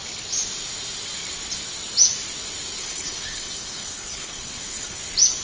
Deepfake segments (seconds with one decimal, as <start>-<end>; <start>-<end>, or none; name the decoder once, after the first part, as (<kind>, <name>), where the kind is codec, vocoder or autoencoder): 2.8-5.0 (codec, HILCodec)